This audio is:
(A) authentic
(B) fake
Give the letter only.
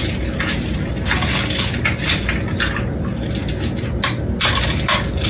A